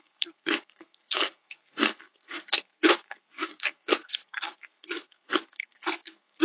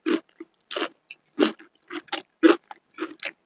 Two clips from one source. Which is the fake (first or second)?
first